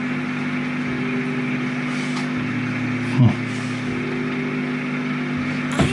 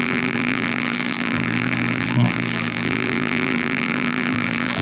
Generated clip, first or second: second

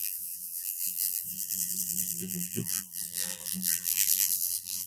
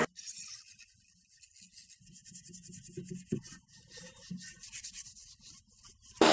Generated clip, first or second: first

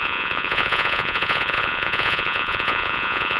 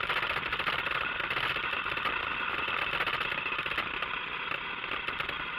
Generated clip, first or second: first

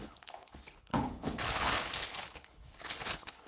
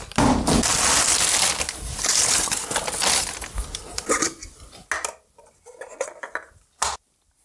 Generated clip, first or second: first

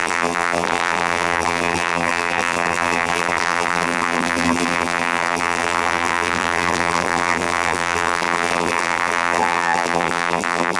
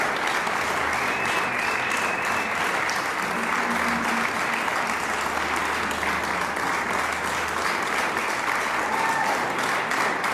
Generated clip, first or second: first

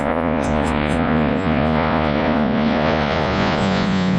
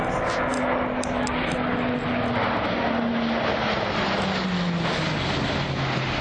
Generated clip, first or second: first